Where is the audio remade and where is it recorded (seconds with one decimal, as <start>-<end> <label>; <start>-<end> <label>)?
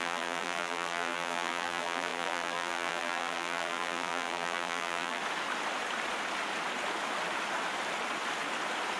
0.0-5.2 remade; 5.2-9.0 recorded